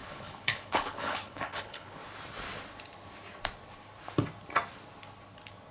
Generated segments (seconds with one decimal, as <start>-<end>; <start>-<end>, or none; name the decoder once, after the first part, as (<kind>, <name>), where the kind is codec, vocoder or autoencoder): 0.0-2.0 (codec, HILCodec)